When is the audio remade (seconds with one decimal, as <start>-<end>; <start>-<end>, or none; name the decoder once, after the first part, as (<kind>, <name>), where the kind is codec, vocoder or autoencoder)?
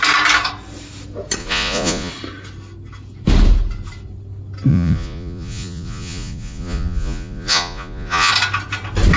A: 1.4-2.1 (vocoder, Vocos); 4.7-8.3